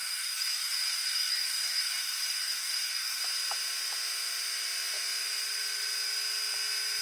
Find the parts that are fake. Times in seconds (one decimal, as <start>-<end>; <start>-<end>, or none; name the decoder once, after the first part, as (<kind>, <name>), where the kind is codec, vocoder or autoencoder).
0.0-3.2 (codec, DAC)